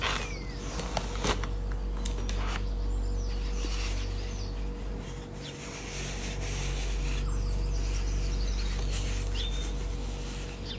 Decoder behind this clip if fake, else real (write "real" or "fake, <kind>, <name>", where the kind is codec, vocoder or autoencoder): real